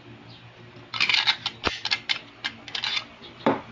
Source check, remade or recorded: recorded